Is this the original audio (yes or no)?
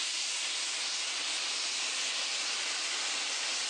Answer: yes